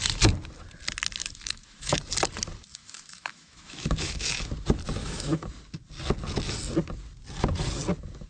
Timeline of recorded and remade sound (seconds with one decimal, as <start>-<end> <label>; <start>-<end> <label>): 0.0-1.2 recorded; 1.2-2.0 remade; 2.0-2.7 recorded; 2.7-4.5 remade; 4.5-5.0 recorded; 5.0-5.5 remade; 5.5-8.3 recorded